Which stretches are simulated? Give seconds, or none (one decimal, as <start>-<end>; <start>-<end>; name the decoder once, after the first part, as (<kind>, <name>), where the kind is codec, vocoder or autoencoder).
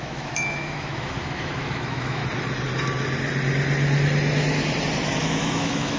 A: 0.0-2.2 (autoencoder, DAC-VAE); 5.2-6.0